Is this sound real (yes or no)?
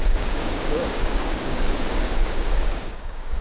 no